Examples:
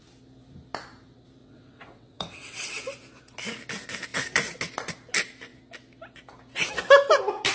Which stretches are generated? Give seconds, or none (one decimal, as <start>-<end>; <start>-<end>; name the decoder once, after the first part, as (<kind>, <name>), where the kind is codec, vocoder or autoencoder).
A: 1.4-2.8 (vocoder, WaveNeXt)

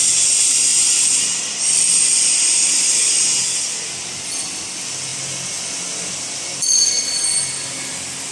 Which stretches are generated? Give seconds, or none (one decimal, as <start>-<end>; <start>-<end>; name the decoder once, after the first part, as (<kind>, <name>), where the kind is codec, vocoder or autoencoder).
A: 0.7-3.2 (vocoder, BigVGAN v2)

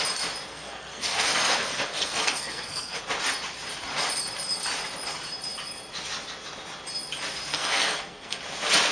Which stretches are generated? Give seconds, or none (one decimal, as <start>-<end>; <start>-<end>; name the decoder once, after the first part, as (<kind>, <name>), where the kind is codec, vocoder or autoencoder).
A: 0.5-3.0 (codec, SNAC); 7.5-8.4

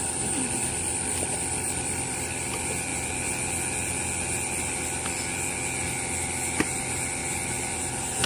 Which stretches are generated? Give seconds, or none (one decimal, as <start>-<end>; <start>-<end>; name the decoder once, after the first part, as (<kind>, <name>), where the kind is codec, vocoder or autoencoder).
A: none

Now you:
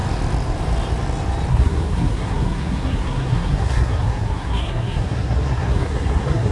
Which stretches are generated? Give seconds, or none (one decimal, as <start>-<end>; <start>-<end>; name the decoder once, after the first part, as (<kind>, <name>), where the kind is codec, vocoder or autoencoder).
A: 1.5-6.5 (codec, SNAC)

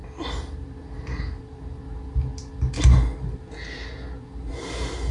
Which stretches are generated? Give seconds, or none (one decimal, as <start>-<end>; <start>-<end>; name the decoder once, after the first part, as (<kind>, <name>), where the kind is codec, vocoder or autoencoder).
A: none

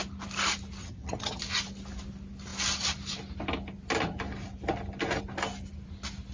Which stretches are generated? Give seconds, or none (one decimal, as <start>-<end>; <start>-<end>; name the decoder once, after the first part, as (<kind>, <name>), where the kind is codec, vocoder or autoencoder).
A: 0.8-1.4 (vocoder, HiFi-GAN)

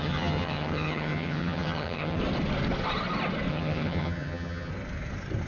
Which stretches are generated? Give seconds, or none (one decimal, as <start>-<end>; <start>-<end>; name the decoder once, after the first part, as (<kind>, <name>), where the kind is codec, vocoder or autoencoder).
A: 0.0-2.2 (vocoder, HiFi-GAN); 3.5-4.7